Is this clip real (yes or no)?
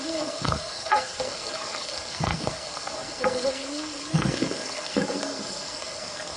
no